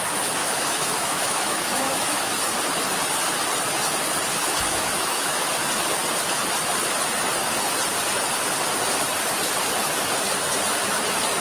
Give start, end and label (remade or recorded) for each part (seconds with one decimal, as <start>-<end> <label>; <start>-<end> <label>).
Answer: 0.0-0.4 recorded; 0.4-2.3 remade; 2.3-4.4 recorded; 4.4-5.4 remade; 5.4-11.4 recorded